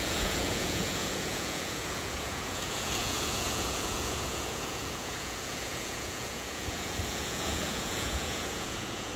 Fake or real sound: fake